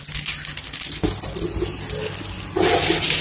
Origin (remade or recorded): recorded